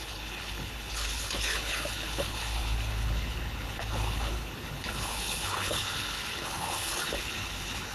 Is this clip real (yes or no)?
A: no